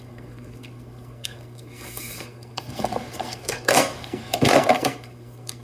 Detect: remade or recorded remade